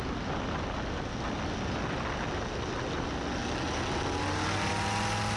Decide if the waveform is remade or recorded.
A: recorded